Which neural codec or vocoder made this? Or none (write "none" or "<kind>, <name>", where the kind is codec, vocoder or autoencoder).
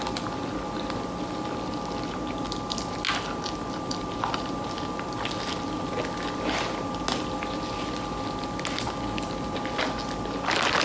none